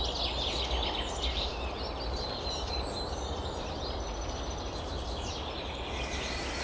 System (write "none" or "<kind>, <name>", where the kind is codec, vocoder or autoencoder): none